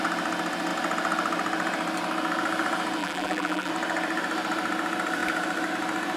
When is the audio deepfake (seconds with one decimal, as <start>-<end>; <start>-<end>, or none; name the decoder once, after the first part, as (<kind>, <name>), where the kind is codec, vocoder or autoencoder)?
3.0-3.7 (vocoder, BigVGAN v2)